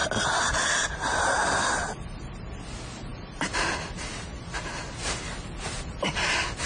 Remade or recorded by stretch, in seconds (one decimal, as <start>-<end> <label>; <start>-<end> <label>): 0.0-6.7 recorded

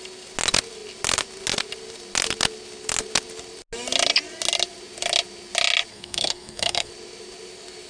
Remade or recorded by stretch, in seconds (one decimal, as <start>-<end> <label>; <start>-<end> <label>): 0.0-5.9 recorded; 5.9-6.9 remade; 6.9-7.9 recorded

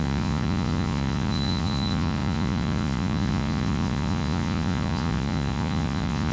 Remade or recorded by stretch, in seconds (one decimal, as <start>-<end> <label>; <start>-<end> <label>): 0.0-6.3 remade

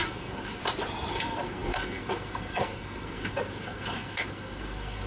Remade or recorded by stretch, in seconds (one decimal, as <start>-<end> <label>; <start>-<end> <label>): 0.0-0.6 remade; 0.6-1.1 recorded; 1.1-5.1 remade

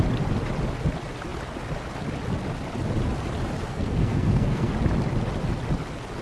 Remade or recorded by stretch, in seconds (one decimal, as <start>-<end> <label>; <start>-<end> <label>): 0.0-3.7 recorded; 3.7-4.7 remade; 4.7-6.2 recorded

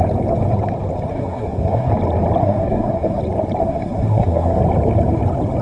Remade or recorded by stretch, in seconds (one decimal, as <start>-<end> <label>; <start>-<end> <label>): 0.0-1.1 recorded; 1.1-1.9 remade; 1.9-2.4 recorded; 2.4-3.2 remade; 3.2-3.6 recorded; 3.6-4.6 remade; 4.6-5.6 recorded